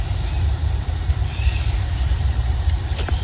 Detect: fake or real fake